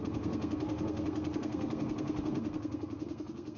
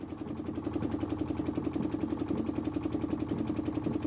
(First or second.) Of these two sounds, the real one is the second